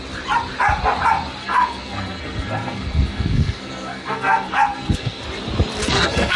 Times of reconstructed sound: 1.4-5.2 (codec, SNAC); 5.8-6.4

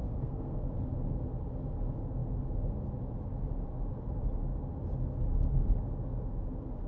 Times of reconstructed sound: 0.0-0.6 (codec, SNAC)